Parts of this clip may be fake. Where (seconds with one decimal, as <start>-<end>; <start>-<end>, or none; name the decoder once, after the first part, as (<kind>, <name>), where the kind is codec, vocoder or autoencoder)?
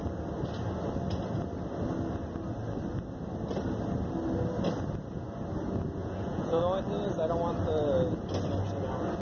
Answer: 6.0-6.6 (vocoder, Vocos)